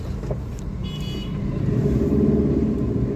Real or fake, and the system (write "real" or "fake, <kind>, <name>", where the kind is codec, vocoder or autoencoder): real